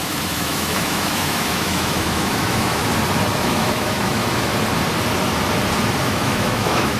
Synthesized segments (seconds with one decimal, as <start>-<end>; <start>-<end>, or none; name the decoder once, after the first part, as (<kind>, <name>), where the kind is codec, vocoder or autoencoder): 0.0-2.8 (autoencoder, DAC-VAE); 3.4-4.5; 6.0-7.0

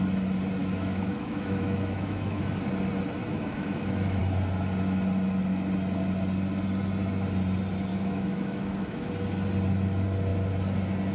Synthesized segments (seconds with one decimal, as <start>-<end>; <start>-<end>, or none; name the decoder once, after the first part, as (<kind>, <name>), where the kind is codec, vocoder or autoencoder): 0.6-2.4 (autoencoder, DAC-VAE); 3.2-4.2; 7.9-9.1

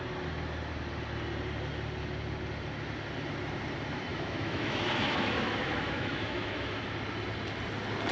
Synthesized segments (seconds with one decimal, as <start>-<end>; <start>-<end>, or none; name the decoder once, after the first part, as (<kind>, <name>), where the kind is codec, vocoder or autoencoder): 4.1-6.8 (autoencoder, DAC-VAE)

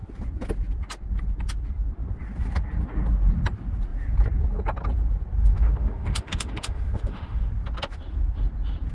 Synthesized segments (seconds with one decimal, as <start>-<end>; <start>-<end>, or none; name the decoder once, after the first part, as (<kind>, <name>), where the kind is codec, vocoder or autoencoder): 5.4-7.5 (autoencoder, DAC-VAE)

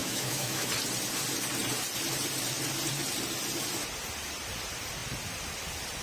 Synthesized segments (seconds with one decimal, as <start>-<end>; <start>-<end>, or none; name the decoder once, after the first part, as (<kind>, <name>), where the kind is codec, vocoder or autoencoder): 0.0-0.7 (autoencoder, DAC-VAE)

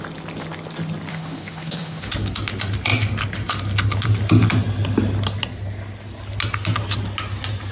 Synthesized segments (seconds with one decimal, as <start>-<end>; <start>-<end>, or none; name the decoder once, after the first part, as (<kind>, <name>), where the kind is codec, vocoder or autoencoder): 1.1-2.1 (autoencoder, DAC-VAE)